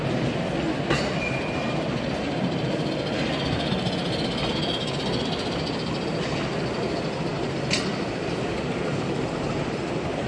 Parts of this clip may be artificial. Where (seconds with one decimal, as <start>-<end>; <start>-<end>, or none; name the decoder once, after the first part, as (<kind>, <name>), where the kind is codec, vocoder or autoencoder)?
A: none

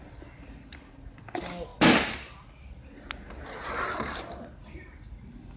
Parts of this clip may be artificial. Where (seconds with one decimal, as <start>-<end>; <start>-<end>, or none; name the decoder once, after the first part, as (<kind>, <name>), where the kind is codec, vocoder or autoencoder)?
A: none

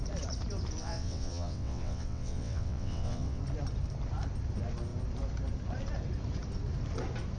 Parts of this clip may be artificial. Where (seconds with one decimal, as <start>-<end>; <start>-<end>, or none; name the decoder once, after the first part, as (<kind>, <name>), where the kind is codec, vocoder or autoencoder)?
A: 0.8-3.4 (vocoder, WaveNeXt)